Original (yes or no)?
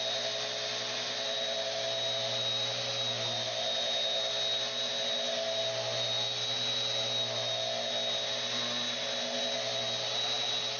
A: yes